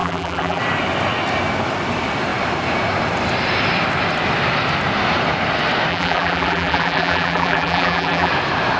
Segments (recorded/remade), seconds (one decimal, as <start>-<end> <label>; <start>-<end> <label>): 0.0-0.6 remade; 0.6-5.9 recorded; 5.9-8.3 remade; 8.3-8.8 recorded